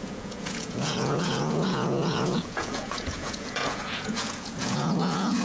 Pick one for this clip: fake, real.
fake